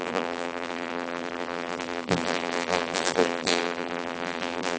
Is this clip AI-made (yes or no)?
yes